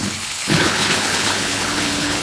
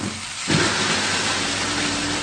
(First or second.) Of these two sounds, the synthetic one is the first